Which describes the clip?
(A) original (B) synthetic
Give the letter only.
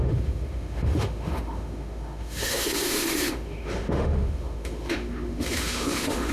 B